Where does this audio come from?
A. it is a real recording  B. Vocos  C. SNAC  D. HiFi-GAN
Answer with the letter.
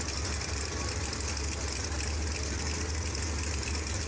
A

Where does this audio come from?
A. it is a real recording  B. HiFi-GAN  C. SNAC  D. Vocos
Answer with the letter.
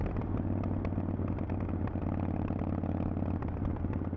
A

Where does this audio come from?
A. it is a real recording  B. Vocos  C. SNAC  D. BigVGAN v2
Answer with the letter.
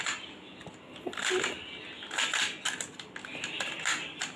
A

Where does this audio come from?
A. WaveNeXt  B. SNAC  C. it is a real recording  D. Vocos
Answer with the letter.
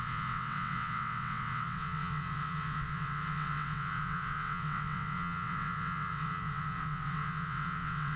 A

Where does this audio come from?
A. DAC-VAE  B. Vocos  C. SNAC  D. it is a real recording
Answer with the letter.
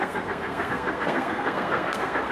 C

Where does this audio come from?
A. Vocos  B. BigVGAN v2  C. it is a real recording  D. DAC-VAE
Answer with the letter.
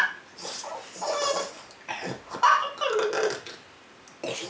C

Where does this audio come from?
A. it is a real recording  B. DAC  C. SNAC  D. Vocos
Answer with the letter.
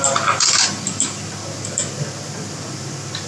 A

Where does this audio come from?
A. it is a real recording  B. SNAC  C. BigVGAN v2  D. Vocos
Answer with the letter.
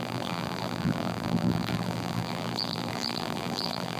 C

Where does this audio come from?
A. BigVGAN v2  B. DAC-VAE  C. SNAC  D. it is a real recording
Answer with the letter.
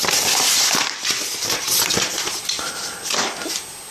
D